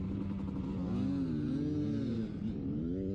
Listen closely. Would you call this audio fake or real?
real